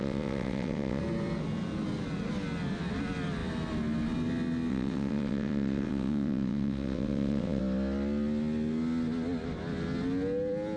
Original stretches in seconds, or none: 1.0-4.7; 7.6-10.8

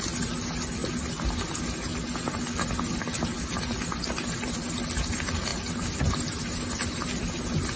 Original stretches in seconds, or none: 0.0-7.8

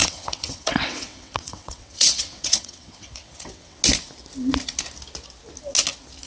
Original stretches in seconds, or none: 3.8-6.3

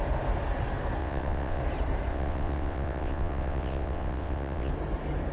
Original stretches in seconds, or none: 0.0-1.0; 1.6-2.1; 4.7-5.3